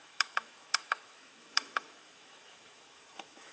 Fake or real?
fake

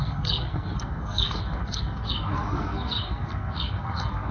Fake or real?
fake